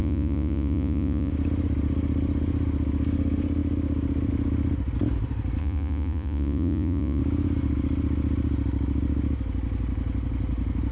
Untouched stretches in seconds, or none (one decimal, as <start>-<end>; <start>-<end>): 1.3-5.6; 7.2-10.9